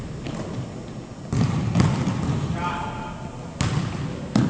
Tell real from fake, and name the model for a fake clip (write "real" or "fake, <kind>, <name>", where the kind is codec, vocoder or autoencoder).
real